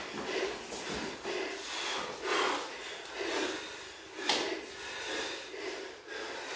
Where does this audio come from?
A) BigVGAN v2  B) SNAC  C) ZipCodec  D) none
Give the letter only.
D